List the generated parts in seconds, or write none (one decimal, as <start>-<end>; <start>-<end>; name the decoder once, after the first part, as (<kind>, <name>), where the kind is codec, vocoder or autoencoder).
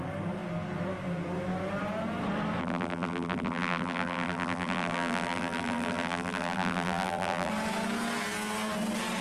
2.6-7.5 (vocoder, BigVGAN v2)